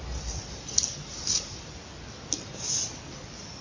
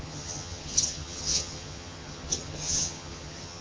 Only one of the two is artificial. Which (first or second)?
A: second